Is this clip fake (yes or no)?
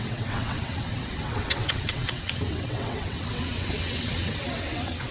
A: yes